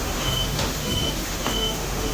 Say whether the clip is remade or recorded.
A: remade